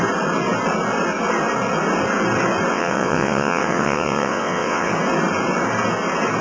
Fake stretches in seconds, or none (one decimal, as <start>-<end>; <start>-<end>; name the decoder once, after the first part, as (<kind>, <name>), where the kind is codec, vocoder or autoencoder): 2.7-4.9 (vocoder, WaveNeXt)